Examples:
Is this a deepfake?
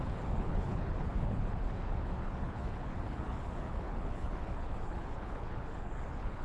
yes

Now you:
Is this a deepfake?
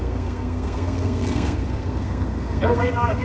yes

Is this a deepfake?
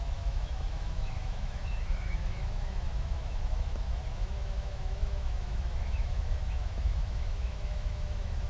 yes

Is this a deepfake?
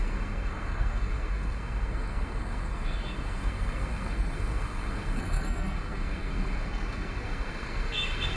yes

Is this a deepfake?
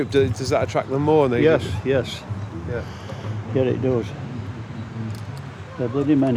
no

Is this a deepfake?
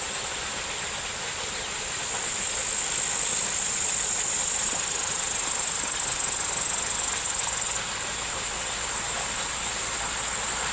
no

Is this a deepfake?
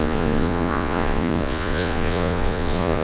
yes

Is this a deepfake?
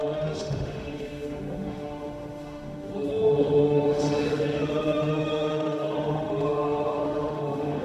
yes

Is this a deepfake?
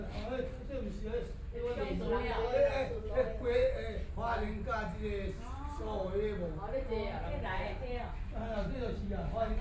no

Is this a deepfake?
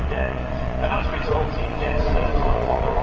yes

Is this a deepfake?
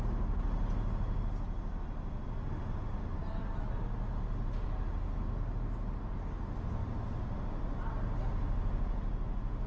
no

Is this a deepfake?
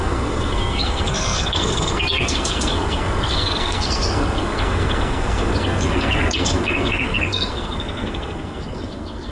yes